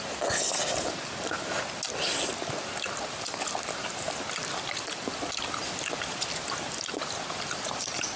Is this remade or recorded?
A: recorded